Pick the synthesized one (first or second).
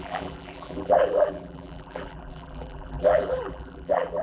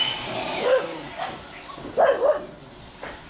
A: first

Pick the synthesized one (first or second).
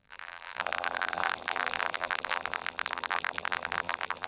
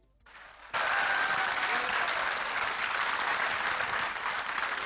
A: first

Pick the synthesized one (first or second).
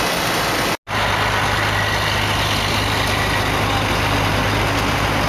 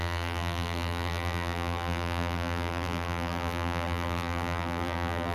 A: second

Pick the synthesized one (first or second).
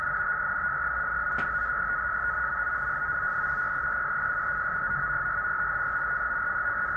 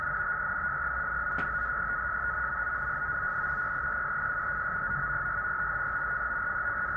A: second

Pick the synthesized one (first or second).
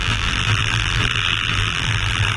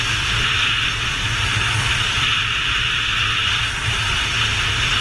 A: first